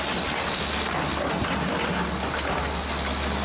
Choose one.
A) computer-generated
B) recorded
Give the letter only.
B